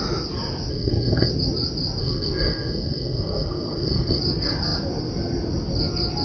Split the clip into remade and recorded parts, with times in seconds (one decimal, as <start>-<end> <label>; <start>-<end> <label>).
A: 0.0-0.7 recorded; 0.7-1.3 remade; 1.3-2.0 recorded; 2.0-4.2 remade; 4.2-6.2 recorded